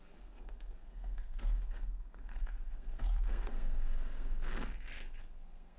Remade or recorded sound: remade